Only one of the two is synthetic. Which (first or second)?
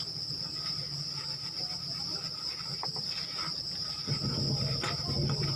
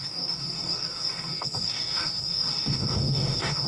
second